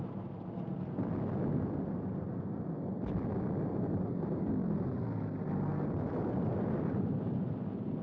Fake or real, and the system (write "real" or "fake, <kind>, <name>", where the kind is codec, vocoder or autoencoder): real